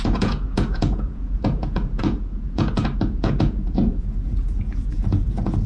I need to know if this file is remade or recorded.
remade